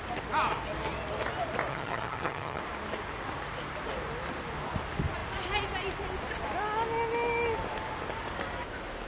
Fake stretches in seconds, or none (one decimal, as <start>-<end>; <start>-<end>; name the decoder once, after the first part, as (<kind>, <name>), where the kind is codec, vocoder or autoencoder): 1.7-2.6 (vocoder, HiFi-GAN)